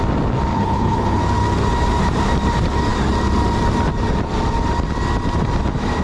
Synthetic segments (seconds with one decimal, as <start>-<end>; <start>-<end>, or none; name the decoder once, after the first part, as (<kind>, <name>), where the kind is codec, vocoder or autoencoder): 0.5-1.2 (codec, HILCodec)